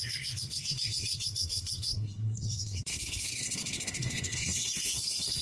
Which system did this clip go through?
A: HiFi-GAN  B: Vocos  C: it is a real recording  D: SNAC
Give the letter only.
D